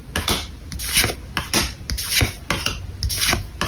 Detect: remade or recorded recorded